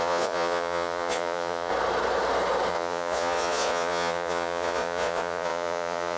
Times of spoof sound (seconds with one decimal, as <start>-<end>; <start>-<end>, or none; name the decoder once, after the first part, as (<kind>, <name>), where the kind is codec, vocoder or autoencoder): 0.0-1.7 (vocoder, Vocos); 2.7-6.2